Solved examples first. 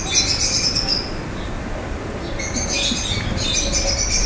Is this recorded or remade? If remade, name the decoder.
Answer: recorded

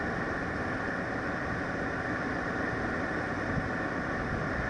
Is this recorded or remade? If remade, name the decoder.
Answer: recorded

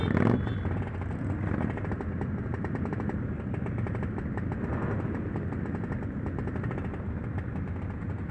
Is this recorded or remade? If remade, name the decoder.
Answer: recorded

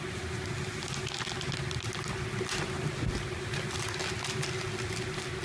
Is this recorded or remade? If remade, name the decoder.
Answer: recorded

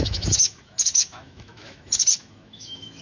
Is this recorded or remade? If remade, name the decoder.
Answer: remade, autoencoder, DAC-VAE